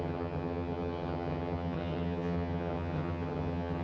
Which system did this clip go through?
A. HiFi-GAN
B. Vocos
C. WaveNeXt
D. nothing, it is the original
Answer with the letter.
A